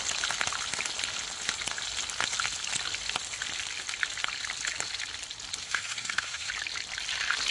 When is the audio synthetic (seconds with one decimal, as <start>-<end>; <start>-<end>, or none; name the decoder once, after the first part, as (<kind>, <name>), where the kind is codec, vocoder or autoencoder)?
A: 5.6-6.5 (codec, SNAC)

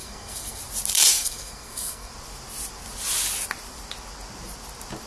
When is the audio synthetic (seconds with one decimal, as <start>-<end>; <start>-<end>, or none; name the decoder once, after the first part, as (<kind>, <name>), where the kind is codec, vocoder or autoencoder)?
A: 0.0-0.6 (codec, SNAC); 1.1-2.1

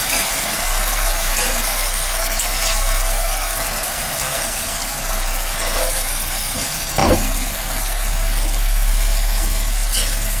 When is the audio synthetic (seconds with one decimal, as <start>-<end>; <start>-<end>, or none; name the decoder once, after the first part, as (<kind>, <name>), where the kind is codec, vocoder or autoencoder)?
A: 0.0-10.4 (codec, SNAC)